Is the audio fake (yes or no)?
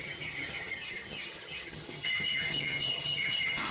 yes